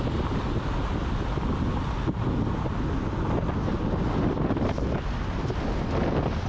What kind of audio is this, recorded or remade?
recorded